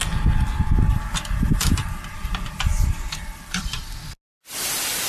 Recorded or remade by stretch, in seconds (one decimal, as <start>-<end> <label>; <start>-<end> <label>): 0.0-0.9 recorded; 0.9-4.0 remade; 4.0-5.1 recorded